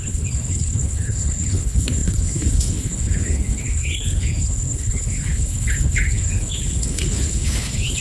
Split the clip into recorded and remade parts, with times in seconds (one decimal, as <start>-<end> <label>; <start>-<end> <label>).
0.0-8.0 remade